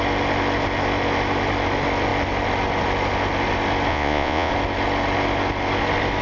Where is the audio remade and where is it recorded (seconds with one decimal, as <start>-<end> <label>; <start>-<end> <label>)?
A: 0.0-3.9 recorded; 3.9-4.5 remade; 4.5-6.2 recorded